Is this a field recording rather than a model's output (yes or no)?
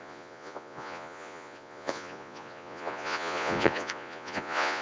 no